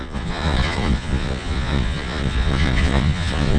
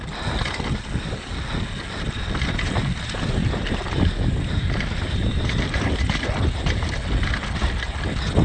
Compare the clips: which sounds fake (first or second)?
first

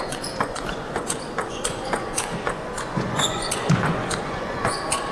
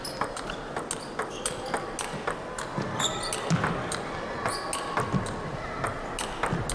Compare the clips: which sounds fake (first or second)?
first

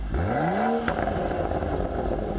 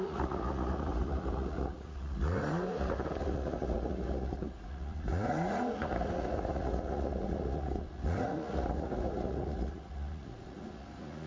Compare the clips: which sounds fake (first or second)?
second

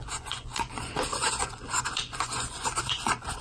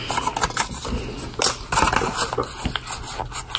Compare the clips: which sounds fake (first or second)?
first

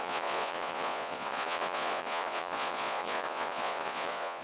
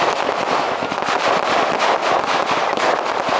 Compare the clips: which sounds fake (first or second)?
first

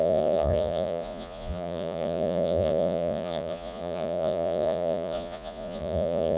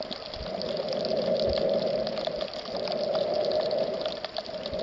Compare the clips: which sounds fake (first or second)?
first